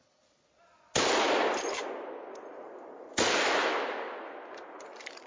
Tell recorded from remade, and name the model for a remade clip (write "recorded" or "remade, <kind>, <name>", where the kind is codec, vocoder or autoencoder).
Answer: recorded